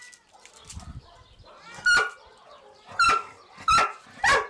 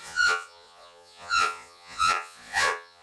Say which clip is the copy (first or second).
second